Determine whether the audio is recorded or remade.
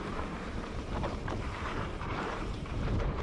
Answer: remade